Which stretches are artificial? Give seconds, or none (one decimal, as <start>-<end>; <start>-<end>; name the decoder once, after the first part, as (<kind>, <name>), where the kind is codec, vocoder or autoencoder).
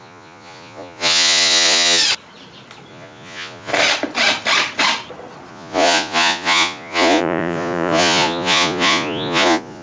0.0-2.0 (vocoder, Vocos); 2.9-3.7; 5.5-9.8